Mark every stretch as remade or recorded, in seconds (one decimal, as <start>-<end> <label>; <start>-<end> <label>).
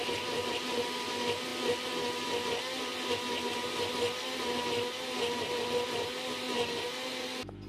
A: 0.0-7.7 recorded